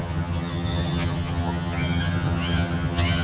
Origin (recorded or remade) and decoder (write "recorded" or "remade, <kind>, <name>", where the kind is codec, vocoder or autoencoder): remade, vocoder, HiFi-GAN